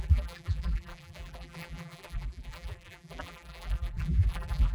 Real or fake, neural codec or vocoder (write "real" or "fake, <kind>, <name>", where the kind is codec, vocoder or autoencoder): fake, vocoder, BigVGAN v2